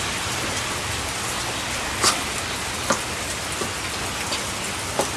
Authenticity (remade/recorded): recorded